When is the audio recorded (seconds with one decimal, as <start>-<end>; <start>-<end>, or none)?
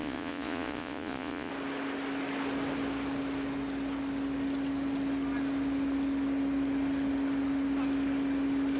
1.5-8.8